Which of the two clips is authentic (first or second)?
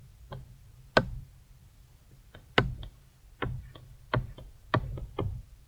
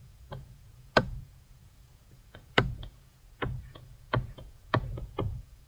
first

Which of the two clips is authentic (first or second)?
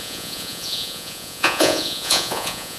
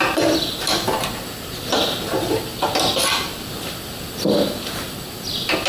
second